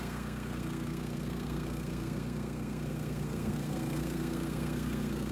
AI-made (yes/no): yes